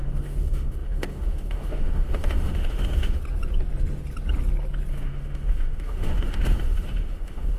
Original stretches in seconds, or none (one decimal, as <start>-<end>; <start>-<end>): 3.2-4.9